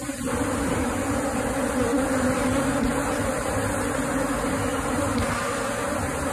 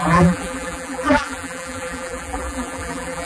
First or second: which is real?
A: first